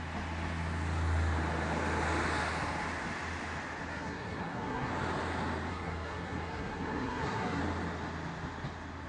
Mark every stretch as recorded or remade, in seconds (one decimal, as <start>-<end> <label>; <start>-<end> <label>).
0.0-3.9 recorded; 3.9-4.9 remade; 4.9-5.7 recorded; 5.7-7.6 remade; 7.6-9.1 recorded